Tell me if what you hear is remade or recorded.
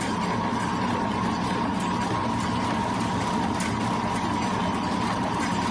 recorded